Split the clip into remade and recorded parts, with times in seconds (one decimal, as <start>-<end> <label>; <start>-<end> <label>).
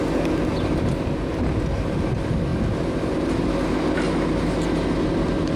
0.0-5.6 recorded